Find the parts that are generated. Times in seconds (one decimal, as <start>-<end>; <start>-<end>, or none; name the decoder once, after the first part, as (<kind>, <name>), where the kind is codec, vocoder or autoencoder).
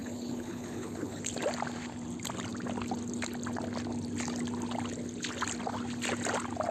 0.0-1.2 (codec, HILCodec)